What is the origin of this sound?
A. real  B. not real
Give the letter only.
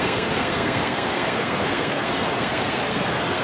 B